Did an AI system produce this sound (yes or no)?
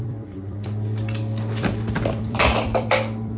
yes